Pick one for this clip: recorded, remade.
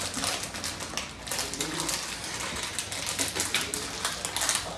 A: recorded